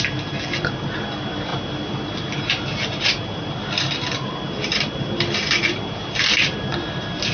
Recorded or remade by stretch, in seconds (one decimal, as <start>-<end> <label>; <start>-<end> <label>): 0.0-7.3 recorded